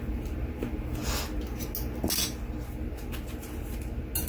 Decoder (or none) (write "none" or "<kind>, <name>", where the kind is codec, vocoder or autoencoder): none